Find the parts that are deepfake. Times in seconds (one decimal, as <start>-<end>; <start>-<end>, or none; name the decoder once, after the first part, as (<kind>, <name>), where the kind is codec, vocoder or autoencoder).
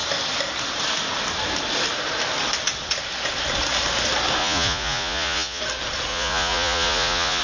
4.4-5.6 (vocoder, Vocos); 6.1-7.4